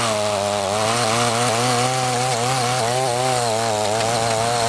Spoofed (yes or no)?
no